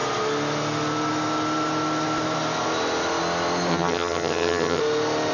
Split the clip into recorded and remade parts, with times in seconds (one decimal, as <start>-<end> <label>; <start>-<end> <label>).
0.0-3.7 recorded; 3.7-4.8 remade; 4.8-5.3 recorded